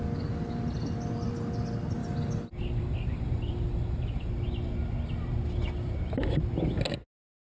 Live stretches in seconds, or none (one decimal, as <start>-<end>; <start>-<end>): 0.0-2.0; 4.3-7.6